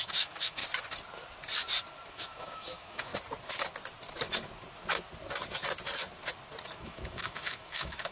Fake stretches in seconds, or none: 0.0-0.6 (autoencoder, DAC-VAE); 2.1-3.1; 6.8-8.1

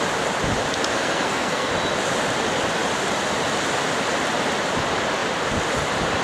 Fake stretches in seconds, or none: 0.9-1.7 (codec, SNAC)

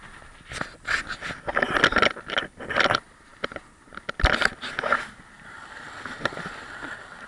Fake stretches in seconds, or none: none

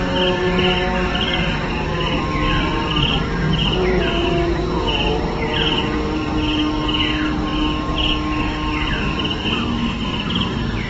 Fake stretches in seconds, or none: 1.1-2.2 (vocoder, BigVGAN v2)

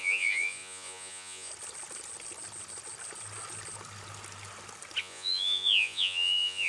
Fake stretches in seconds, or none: 0.0-1.5 (vocoder, Vocos); 5.0-6.7